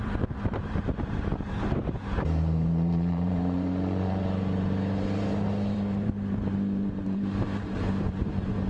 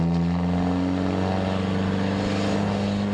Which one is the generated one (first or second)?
first